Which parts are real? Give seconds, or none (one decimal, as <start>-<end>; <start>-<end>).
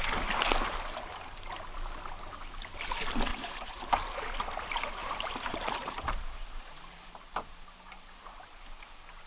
0.0-3.3; 3.9-5.0; 7.1-9.3